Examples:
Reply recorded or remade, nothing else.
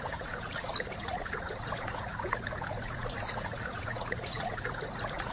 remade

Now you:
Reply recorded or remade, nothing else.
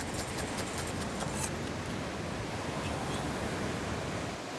recorded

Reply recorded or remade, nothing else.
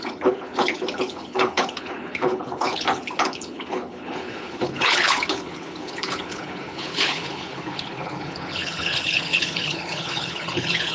remade